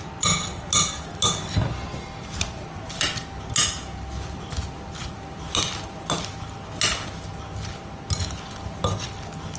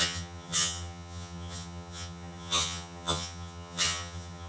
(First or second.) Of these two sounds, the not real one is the second